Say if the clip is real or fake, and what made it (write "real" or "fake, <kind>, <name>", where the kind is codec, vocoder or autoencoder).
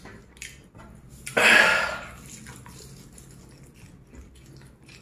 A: real